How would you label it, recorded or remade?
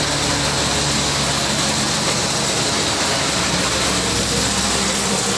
recorded